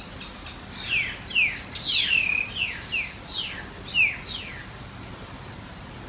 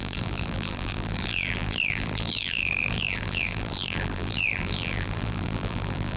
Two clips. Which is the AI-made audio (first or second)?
second